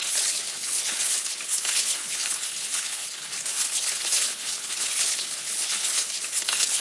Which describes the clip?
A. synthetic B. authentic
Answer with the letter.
A